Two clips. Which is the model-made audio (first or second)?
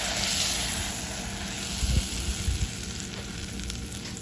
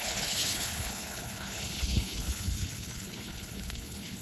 second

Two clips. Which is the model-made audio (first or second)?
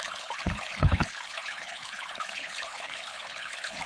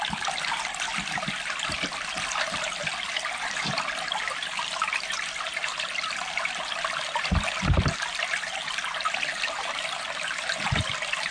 first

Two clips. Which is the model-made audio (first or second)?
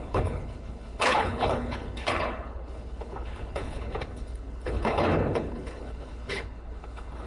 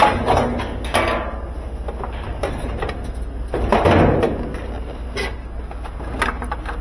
first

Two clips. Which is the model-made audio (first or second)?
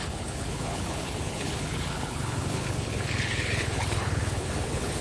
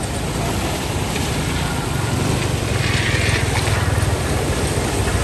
first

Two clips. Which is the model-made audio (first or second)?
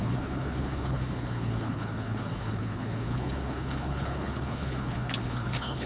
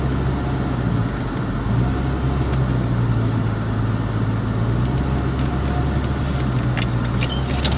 first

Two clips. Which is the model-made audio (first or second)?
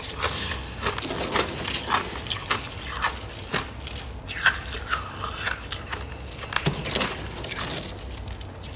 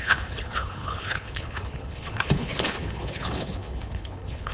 second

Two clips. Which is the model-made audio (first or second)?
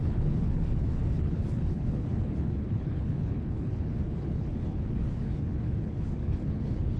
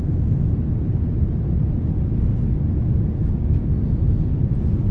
first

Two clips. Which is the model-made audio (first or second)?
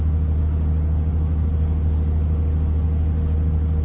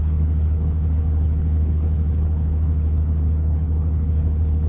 second